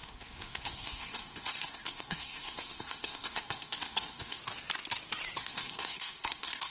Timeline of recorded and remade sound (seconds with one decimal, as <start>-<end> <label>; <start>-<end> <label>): 0.0-4.4 remade; 4.4-5.4 recorded; 5.4-6.7 remade